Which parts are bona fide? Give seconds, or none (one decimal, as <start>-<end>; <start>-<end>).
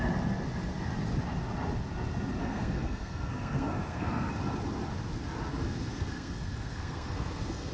0.0-2.4; 4.3-5.5